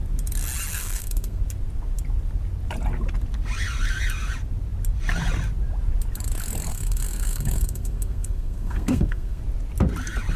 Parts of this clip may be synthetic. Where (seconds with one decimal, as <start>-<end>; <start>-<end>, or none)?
0.7-1.4; 6.7-9.4